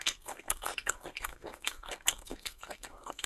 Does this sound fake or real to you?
fake